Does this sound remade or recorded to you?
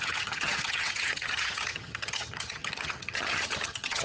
remade